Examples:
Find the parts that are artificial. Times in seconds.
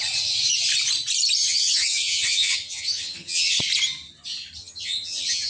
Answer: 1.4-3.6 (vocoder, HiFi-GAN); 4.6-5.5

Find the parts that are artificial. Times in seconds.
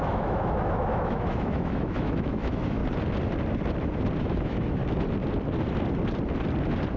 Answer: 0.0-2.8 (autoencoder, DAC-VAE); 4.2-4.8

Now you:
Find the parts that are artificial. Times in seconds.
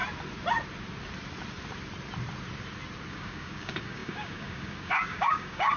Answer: 3.1-5.8 (codec, DAC)